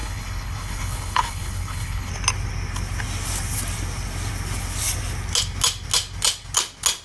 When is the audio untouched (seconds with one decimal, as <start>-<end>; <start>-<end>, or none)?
2.1-7.0